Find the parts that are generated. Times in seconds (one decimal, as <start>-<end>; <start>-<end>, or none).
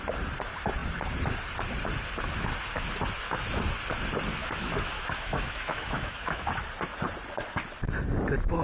4.4-6.5